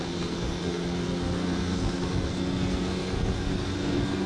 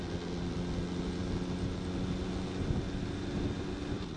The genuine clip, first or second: second